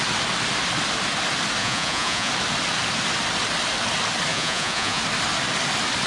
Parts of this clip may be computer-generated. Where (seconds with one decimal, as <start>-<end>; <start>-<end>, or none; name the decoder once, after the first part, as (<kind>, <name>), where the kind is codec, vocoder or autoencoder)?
1.6-2.3 (vocoder, Vocos); 4.3-5.0